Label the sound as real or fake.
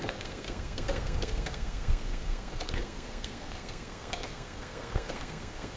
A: fake